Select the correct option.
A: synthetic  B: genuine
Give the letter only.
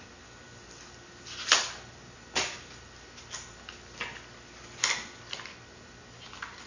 B